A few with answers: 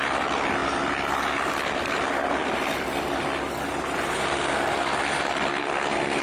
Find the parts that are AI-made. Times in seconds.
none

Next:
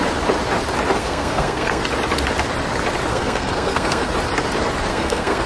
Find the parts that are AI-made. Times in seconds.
1.0-1.8 (codec, SNAC); 3.1-4.1; 4.9-5.5

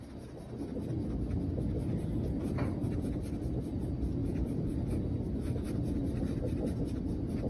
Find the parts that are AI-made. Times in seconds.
4.2-5.0 (vocoder, Vocos)

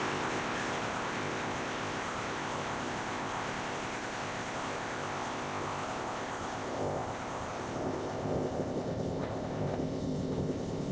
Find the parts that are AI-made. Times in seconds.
0.0-10.9 (codec, ZipCodec)

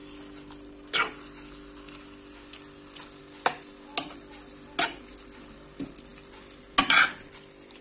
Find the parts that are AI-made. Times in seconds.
none

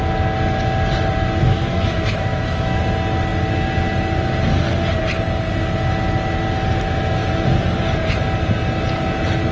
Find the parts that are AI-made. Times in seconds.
1.4-2.8 (autoencoder, DAC-VAE)

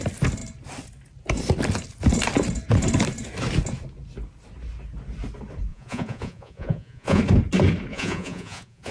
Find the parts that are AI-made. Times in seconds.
5.7-7.2 (vocoder, Vocos); 7.9-8.9

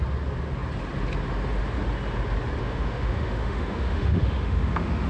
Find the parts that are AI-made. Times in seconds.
2.6-5.1 (autoencoder, DAC-VAE)